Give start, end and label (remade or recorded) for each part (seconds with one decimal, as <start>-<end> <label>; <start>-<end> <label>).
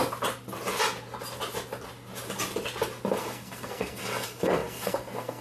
0.0-3.2 recorded; 3.2-5.4 remade